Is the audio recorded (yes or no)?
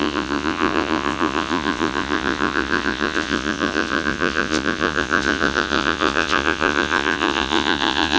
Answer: no